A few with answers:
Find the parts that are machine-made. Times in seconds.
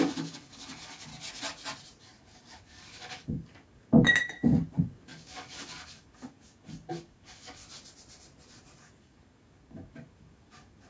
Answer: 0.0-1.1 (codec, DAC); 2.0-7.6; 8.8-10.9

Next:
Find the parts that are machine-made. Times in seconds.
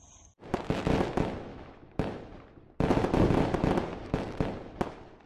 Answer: 1.5-2.2 (autoencoder, DAC-VAE)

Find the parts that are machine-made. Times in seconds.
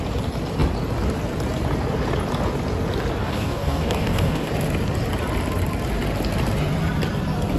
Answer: 3.2-4.5 (codec, DAC)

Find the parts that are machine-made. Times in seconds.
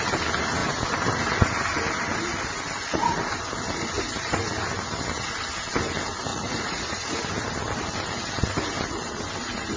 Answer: 6.3-7.2 (vocoder, Vocos)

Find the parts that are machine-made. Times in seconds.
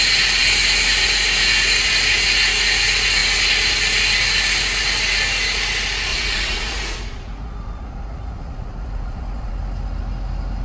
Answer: 6.1-9.5 (vocoder, Vocos)